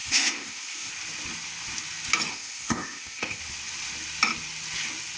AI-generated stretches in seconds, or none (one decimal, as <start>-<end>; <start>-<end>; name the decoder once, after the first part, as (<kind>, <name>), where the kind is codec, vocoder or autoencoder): 0.0-0.9 (codec, ZipCodec); 2.3-3.4

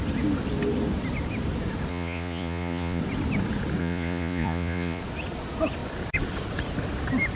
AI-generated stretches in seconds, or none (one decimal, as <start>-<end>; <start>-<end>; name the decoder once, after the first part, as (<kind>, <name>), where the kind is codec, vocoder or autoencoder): 1.9-3.0 (vocoder, Vocos); 3.8-5.0